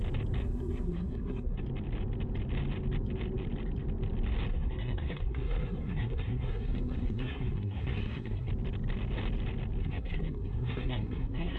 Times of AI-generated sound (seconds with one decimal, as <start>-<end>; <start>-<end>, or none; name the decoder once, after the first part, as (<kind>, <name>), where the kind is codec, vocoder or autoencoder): 0.4-1.6 (codec, SNAC); 4.5-8.5; 9.8-11.6